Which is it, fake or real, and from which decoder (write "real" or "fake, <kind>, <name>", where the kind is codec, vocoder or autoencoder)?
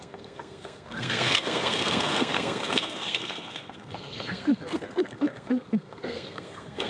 fake, codec, SNAC